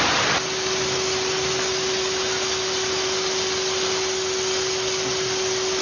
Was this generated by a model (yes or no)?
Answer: no